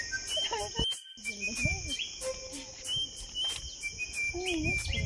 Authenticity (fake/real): real